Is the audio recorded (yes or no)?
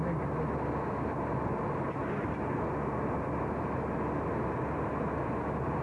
yes